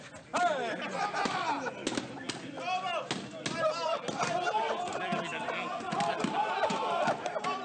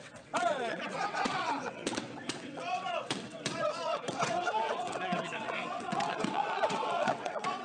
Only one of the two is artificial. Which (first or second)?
second